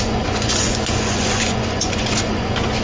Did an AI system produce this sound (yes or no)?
yes